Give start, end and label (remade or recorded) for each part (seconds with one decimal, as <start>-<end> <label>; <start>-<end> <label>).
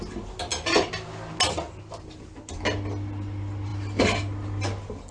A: 0.0-5.1 recorded